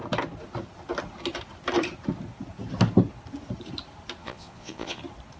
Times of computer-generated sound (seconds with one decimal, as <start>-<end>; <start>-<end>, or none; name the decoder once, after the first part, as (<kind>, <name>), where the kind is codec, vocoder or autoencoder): 4.2-5.0 (vocoder, Vocos)